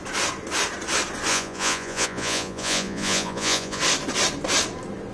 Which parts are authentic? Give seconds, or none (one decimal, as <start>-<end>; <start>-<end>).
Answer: 0.0-1.3; 3.8-5.1